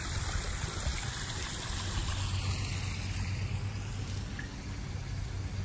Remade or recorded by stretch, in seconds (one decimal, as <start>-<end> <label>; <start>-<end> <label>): 0.0-5.6 recorded